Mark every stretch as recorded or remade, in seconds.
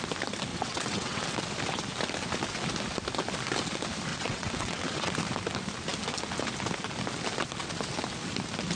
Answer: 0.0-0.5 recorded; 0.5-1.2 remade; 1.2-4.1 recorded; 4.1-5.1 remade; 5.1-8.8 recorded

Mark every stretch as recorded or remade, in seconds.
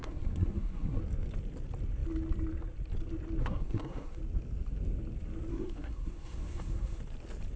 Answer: 0.0-1.0 remade; 1.0-3.4 recorded; 3.4-4.2 remade; 4.2-5.5 recorded; 5.5-7.0 remade; 7.0-7.6 recorded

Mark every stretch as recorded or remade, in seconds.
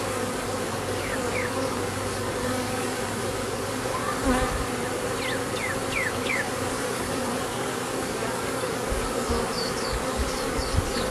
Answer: 0.0-4.0 remade; 4.0-6.1 recorded; 6.1-11.1 remade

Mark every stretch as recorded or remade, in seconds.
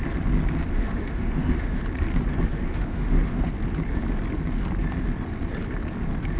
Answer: 0.0-0.7 recorded; 0.7-1.8 remade; 1.8-2.5 recorded; 2.5-3.4 remade; 3.4-6.4 recorded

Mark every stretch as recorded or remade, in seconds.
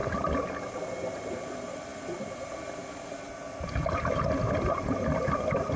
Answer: 0.0-0.6 recorded; 0.6-5.8 remade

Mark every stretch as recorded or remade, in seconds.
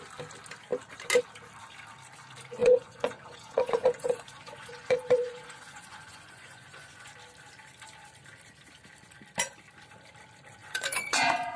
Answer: 0.0-2.6 recorded; 2.6-7.1 remade; 7.1-10.6 recorded; 10.6-11.6 remade